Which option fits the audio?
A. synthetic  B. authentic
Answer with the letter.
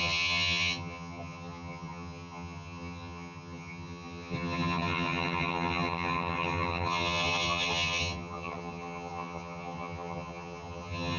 A